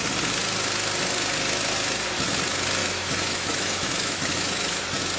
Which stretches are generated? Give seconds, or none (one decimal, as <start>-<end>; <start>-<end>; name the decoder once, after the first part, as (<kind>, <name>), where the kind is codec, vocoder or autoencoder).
2.8-4.8 (autoencoder, DAC-VAE)